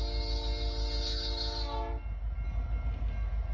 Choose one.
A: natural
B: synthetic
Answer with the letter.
A